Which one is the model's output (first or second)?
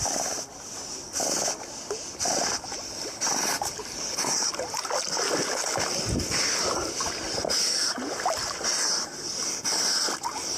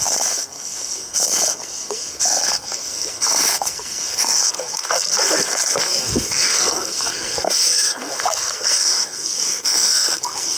second